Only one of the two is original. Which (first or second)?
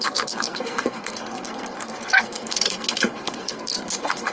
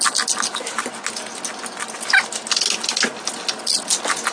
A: second